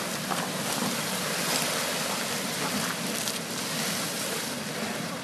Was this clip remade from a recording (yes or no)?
no